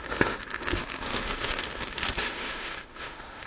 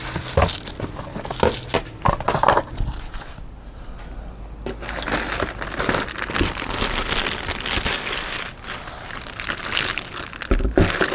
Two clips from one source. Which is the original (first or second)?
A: second